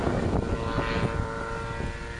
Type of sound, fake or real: real